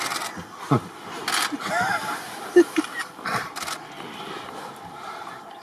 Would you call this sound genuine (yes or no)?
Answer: no